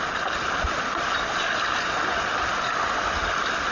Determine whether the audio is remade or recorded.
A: recorded